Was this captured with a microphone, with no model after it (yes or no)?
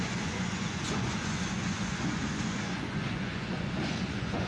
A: no